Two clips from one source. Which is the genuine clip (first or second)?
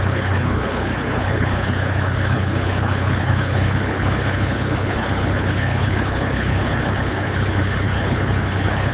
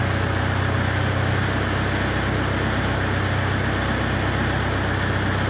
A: second